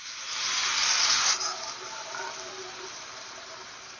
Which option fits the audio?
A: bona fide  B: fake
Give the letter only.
A